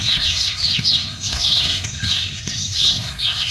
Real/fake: fake